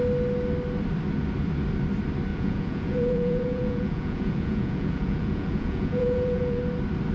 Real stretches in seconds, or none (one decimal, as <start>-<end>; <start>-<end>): 0.0-2.3; 6.6-7.1